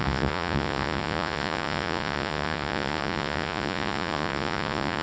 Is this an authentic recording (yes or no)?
no